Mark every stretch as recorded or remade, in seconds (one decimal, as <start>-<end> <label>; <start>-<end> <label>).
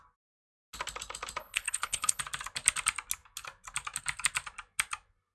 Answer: 0.0-1.4 recorded; 1.4-2.2 remade; 2.2-5.3 recorded